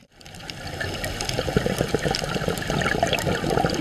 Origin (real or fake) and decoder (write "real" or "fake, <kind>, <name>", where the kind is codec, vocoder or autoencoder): fake, vocoder, BigVGAN v2